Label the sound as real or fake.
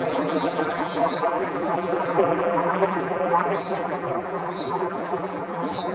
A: fake